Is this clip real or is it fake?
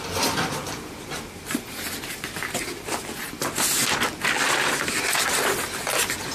real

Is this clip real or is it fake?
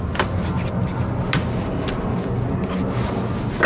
real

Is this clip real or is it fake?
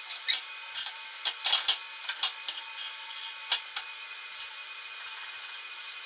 real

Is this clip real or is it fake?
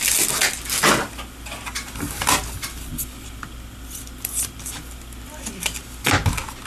real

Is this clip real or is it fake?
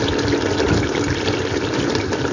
real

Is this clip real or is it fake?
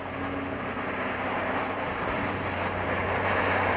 real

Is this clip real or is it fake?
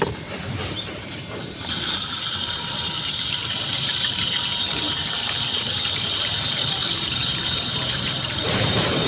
fake